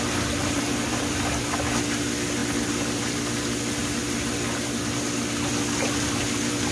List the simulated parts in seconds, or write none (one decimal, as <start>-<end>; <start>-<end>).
none